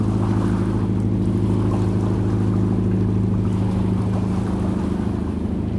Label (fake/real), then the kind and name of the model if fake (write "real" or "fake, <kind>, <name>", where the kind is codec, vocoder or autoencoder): real